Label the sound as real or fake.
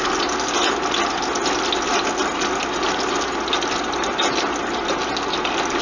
real